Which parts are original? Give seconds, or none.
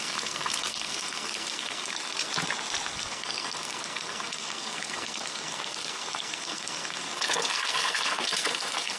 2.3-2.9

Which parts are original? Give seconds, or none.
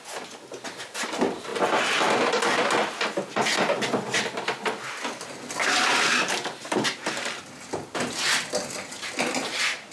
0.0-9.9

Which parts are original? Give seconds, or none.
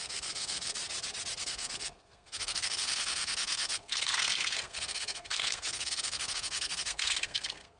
0.8-1.4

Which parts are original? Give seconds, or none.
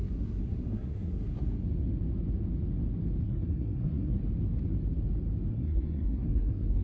1.6-3.2; 4.2-5.5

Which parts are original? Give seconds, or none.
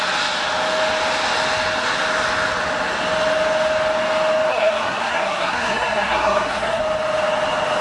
0.0-4.5; 6.8-7.8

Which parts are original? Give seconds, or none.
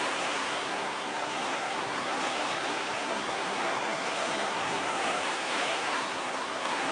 none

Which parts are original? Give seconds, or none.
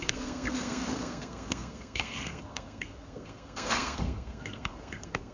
none